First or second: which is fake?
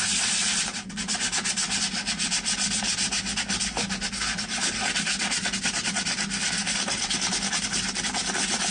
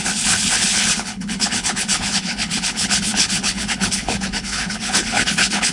second